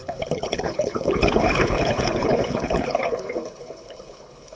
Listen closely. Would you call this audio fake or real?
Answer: fake